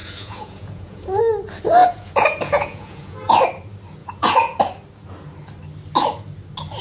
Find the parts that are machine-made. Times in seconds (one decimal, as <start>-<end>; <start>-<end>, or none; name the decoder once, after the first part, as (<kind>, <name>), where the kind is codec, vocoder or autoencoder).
0.0-1.2 (vocoder, Vocos); 1.8-3.4; 4.0-4.6